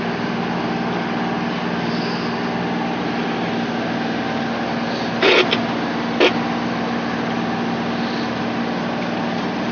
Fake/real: real